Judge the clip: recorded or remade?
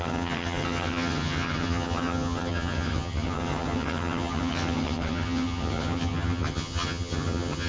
remade